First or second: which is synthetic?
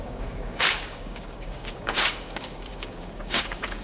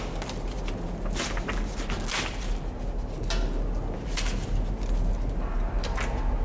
first